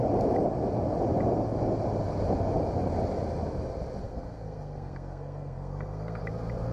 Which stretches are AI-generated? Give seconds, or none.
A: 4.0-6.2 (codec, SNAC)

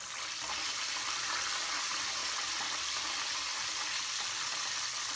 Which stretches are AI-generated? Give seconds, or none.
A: none

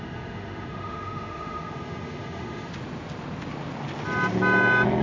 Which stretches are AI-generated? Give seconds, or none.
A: 0.0-2.7 (autoencoder, DAC-VAE)

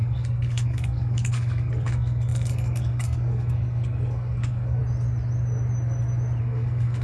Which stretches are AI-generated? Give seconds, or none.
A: 0.0-4.8 (codec, SNAC); 6.4-7.0

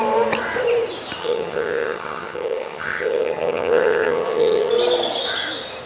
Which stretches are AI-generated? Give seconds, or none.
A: 1.2-4.7 (vocoder, HiFi-GAN)

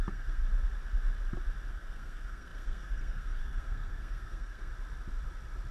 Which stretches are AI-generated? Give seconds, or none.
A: 0.0-0.4 (codec, SNAC); 1.7-4.7

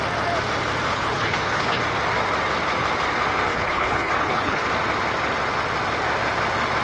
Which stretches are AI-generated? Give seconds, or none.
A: 0.9-1.8 (codec, HILCodec); 3.5-4.7

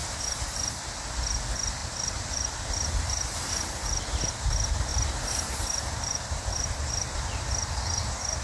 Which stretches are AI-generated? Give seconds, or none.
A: 0.0-0.8 (vocoder, BigVGAN v2); 1.8-4.3; 4.9-7.2